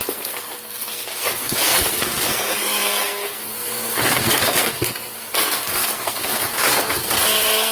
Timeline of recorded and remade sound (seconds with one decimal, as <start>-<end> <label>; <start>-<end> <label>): 0.0-7.7 remade